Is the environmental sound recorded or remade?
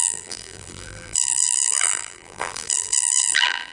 remade